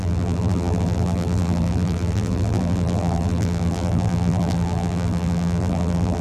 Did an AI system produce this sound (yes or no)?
yes